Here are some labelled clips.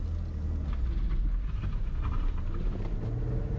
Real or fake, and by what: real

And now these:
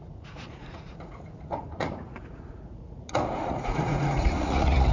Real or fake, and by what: fake, vocoder, Vocos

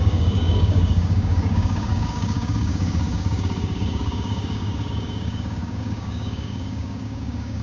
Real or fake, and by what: fake, codec, DAC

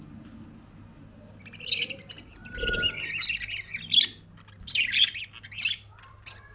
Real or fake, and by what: real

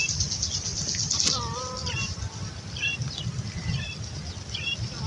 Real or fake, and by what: real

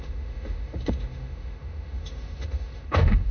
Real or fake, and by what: fake, autoencoder, DAC-VAE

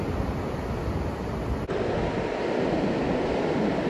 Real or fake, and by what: real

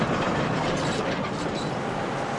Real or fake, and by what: real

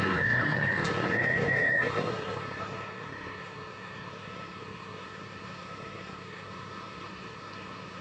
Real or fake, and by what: fake, codec, SNAC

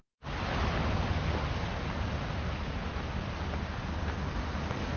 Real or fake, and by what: real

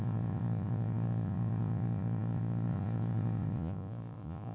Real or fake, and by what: fake, vocoder, Vocos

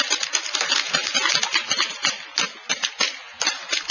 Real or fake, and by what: real